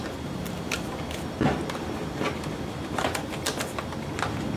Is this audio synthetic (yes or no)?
no